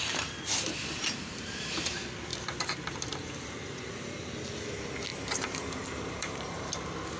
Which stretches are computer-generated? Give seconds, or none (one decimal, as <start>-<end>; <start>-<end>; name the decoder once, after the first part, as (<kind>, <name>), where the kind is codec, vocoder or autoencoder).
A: 5.1-6.7 (vocoder, BigVGAN v2)